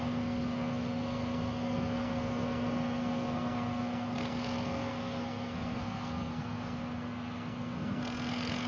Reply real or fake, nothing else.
fake